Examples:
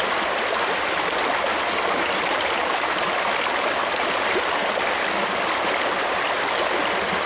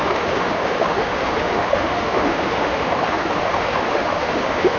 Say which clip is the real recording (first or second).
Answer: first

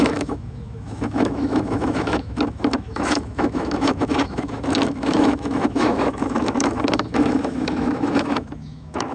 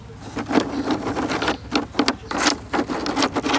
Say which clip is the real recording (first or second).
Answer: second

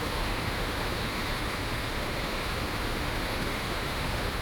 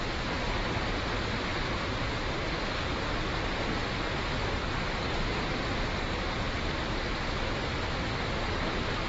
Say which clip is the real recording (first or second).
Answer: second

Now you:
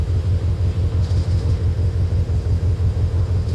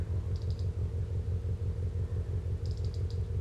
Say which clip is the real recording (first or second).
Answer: second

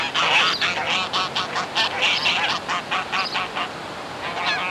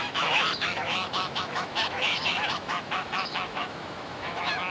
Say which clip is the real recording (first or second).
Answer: first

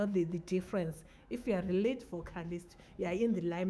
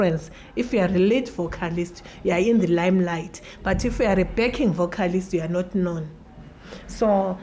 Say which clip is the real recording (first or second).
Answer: second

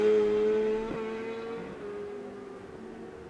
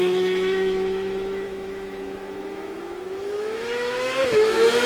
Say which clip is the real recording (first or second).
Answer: first